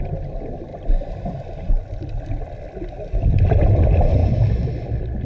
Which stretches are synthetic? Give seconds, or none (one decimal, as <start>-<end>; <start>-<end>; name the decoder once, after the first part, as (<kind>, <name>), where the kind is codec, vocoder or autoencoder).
0.7-3.8 (vocoder, BigVGAN v2); 4.2-4.7